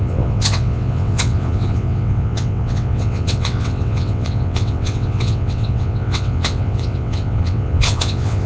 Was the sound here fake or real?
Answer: fake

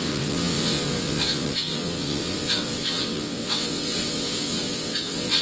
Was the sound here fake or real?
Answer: fake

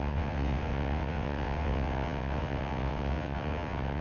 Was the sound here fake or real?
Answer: fake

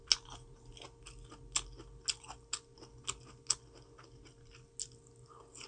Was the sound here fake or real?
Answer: real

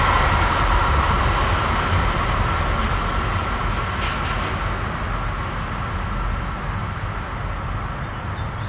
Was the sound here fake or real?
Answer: real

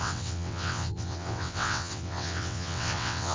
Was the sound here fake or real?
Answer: fake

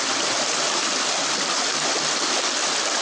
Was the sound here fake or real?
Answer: real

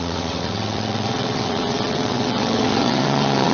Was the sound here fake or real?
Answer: fake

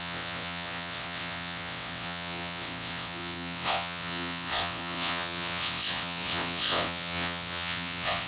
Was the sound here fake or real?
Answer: fake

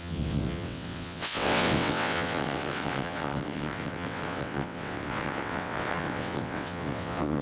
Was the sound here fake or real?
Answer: fake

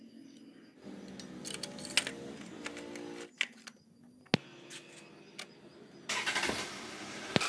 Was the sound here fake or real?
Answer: real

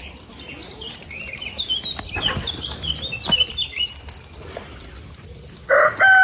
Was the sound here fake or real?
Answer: real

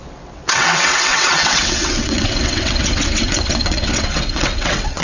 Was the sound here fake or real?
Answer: fake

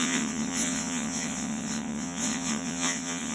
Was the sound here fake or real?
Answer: fake